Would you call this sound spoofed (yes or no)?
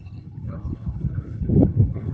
yes